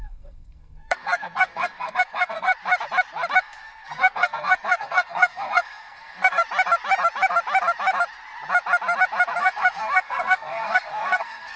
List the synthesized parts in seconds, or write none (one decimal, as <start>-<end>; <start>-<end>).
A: 0.0-2.5; 3.4-6.4; 9.4-11.6